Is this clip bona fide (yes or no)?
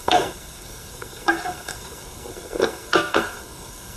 no